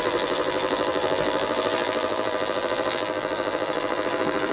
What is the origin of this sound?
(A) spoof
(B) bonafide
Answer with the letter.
A